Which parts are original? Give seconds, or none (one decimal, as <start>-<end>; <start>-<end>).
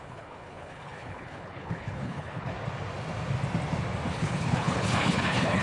2.5-4.1